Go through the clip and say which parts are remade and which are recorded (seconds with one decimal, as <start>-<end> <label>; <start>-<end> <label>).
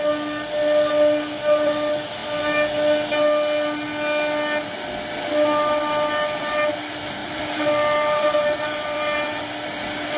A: 0.0-7.2 recorded; 7.2-9.4 remade; 9.4-10.2 recorded